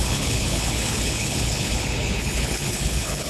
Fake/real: fake